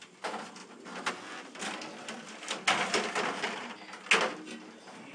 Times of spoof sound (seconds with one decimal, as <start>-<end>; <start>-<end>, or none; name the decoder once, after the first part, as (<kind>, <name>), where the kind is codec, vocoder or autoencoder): none